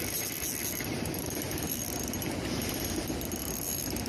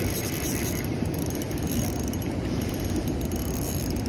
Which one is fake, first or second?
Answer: second